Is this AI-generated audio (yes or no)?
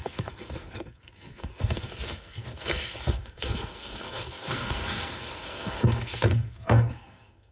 yes